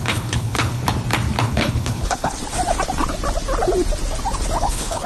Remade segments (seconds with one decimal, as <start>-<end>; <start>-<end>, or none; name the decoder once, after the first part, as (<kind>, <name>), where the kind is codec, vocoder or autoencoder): 0.0-0.8 (codec, HILCodec); 1.4-2.4; 4.6-5.1